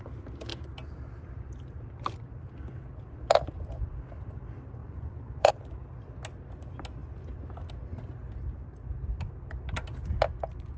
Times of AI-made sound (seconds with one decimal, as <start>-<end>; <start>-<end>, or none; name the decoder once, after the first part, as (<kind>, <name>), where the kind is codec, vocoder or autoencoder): 4.8-5.5 (vocoder, Vocos)